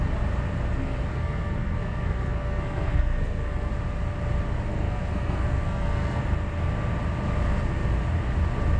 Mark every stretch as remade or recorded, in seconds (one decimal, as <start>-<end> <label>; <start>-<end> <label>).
0.0-1.1 recorded; 1.1-3.7 remade; 3.7-4.7 recorded; 4.7-6.2 remade; 6.2-8.8 recorded